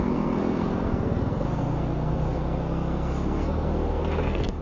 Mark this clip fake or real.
fake